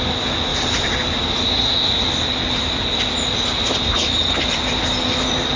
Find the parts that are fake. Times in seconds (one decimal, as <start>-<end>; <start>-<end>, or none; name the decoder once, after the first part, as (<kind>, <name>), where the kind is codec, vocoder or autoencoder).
none